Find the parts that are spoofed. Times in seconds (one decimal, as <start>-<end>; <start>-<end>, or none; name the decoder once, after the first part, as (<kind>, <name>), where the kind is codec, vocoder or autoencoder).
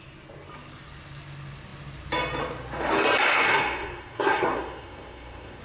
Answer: 3.3-5.6 (codec, SNAC)